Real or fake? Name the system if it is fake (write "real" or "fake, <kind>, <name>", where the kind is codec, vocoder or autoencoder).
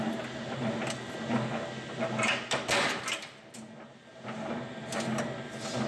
real